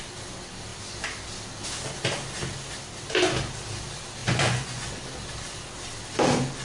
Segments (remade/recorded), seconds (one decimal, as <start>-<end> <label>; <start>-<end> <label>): 0.0-4.2 recorded; 4.2-4.9 remade; 4.9-6.6 recorded